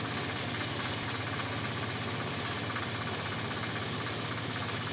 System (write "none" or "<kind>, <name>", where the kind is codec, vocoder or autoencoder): none